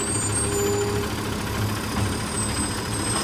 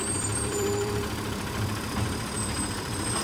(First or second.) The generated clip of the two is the second